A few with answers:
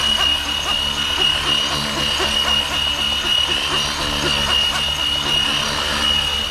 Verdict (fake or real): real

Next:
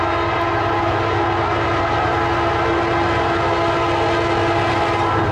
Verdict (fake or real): real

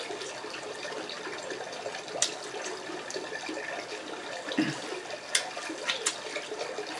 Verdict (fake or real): real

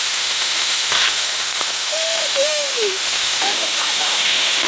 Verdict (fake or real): fake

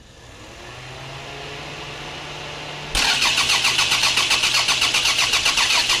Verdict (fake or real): real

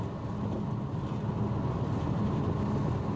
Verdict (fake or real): real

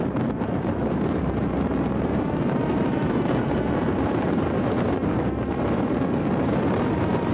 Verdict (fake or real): fake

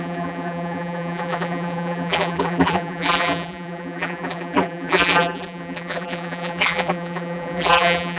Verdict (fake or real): fake